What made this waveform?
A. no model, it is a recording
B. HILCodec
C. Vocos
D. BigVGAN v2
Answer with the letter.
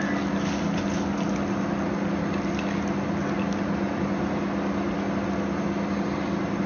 A